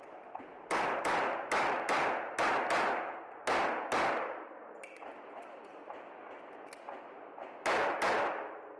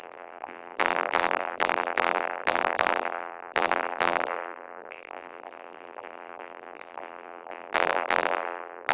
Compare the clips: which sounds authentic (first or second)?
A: first